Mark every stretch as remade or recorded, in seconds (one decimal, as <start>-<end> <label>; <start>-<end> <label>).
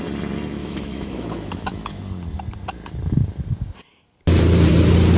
0.0-0.6 recorded; 0.6-2.0 remade; 2.0-5.2 recorded